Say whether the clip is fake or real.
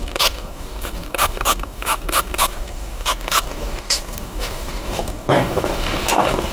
fake